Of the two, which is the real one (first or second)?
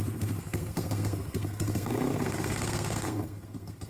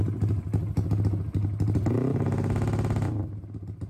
second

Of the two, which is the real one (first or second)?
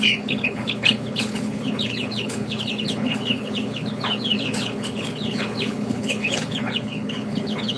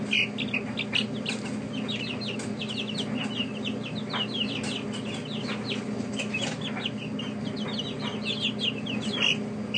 second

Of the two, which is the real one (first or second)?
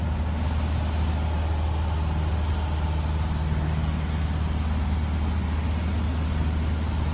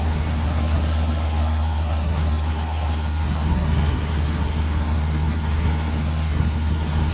first